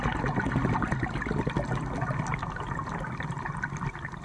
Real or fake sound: real